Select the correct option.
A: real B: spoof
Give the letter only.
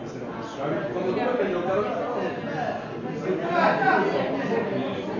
A